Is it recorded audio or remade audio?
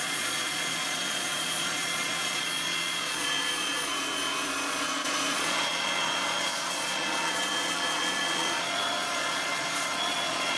remade